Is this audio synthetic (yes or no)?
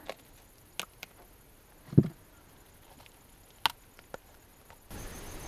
no